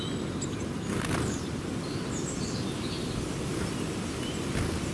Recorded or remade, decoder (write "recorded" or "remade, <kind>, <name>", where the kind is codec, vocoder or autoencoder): recorded